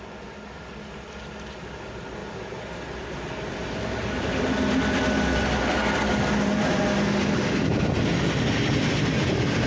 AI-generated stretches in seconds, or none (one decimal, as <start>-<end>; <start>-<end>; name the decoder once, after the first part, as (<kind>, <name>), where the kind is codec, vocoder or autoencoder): none